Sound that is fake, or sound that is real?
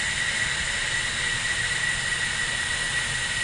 real